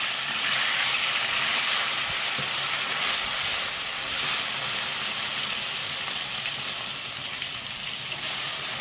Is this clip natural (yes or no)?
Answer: yes